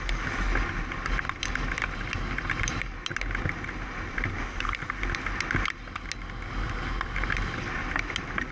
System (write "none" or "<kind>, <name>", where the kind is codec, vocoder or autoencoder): none